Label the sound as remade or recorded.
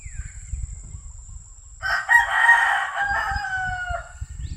recorded